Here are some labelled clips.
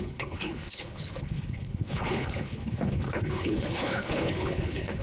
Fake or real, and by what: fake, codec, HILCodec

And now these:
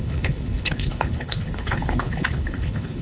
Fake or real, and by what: fake, codec, HILCodec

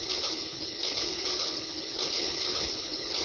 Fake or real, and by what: fake, codec, HILCodec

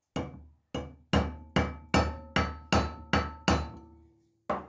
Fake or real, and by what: real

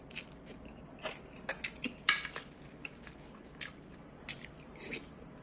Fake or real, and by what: real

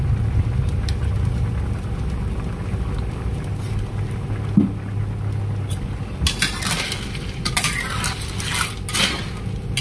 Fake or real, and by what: real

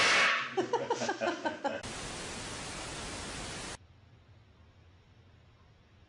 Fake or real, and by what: real